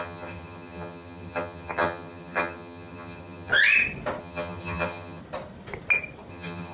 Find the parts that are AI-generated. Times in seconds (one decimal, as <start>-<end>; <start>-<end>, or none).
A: 0.0-3.5; 4.2-5.2; 6.3-6.7